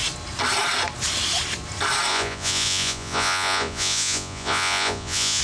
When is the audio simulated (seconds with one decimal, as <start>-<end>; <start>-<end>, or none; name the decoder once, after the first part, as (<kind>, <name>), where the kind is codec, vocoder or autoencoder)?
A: 2.1-5.4 (vocoder, Vocos)